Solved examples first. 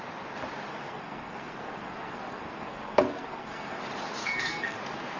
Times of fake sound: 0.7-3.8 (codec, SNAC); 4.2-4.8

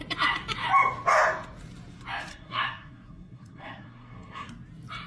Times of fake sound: 2.3-4.5 (codec, SNAC)

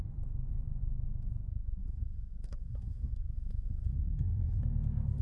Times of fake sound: 1.5-4.6 (codec, SNAC)

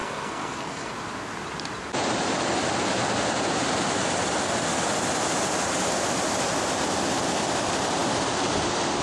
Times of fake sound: 0.0-0.9 (codec, SNAC)

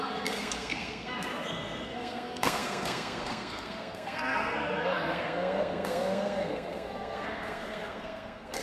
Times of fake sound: 0.0-8.6 (codec, SNAC)

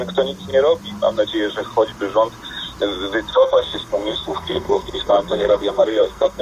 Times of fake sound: 3.3-6.4 (codec, SNAC)

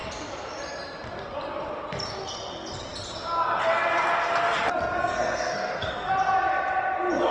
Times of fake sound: 5.0-6.1 (codec, SNAC)